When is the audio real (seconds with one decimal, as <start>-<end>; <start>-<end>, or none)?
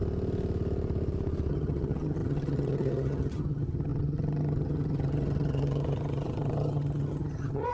0.0-1.5